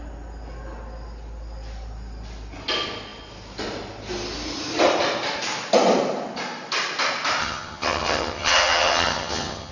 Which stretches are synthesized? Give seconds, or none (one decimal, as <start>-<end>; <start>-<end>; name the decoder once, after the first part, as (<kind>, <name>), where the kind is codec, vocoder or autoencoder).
7.4-9.7 (vocoder, HiFi-GAN)